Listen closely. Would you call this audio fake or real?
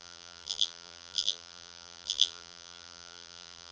fake